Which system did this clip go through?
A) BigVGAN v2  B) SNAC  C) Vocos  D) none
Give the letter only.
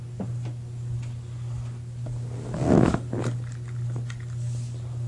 D